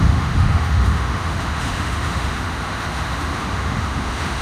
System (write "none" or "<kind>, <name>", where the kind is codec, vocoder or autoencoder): autoencoder, DAC-VAE